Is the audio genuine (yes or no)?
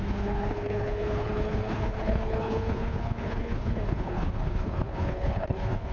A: no